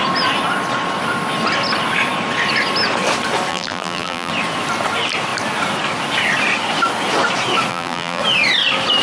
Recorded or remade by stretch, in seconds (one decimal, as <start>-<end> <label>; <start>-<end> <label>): 0.0-3.5 recorded; 3.5-4.3 remade; 4.3-7.7 recorded; 7.7-8.2 remade; 8.2-9.0 recorded

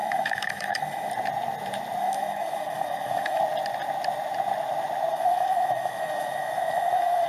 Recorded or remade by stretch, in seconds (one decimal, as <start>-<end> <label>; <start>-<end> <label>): 0.0-1.1 remade; 1.1-2.0 recorded; 2.0-3.4 remade; 3.4-5.1 recorded; 5.1-7.3 remade

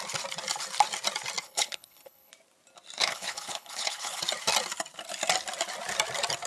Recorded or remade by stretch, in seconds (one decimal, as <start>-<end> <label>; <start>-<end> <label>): 0.0-1.4 recorded; 1.4-2.3 remade; 2.3-3.0 recorded; 3.0-4.2 remade; 4.2-6.5 recorded

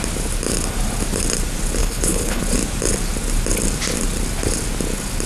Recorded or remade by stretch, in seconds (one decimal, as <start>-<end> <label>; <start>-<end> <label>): 0.0-1.8 recorded; 1.8-2.4 remade; 2.4-5.3 recorded

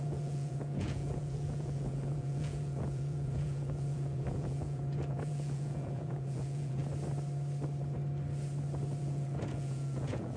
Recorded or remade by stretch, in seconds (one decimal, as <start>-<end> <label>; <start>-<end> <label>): 0.0-6.8 remade; 6.8-9.0 recorded; 9.0-10.4 remade

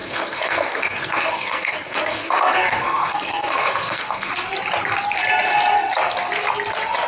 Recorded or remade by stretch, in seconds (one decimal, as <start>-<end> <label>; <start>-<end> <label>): 0.0-4.3 remade; 4.3-7.1 recorded

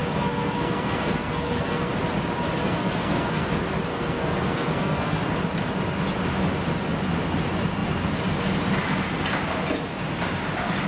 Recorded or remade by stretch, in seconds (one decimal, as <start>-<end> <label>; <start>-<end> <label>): 0.0-1.9 remade; 1.9-2.6 recorded; 2.6-3.5 remade; 3.5-3.9 recorded; 3.9-5.2 remade; 5.2-10.9 recorded